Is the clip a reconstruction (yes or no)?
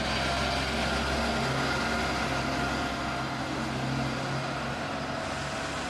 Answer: no